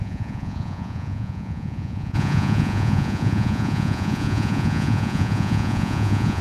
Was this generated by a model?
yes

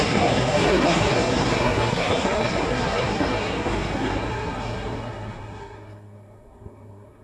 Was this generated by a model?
yes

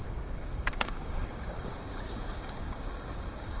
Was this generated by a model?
yes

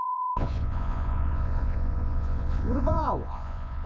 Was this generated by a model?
yes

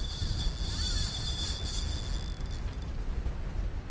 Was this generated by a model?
no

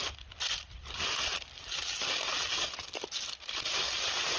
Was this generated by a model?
no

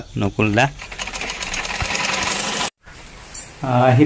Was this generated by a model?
yes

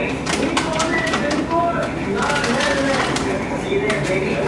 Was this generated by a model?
yes